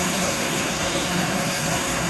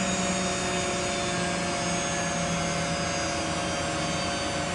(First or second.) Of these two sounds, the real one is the second